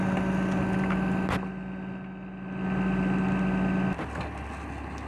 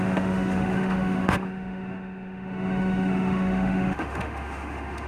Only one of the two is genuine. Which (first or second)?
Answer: first